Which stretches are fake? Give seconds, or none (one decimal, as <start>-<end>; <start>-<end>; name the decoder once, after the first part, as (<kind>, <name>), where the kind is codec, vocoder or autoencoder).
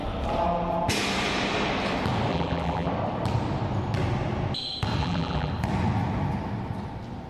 2.3-2.9 (vocoder, BigVGAN v2); 5.0-5.5